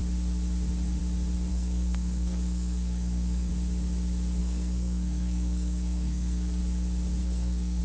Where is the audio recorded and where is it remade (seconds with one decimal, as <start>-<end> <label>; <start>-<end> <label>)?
0.0-1.5 recorded; 1.5-3.5 remade; 3.5-4.4 recorded; 4.4-6.6 remade; 6.6-7.2 recorded; 7.2-7.8 remade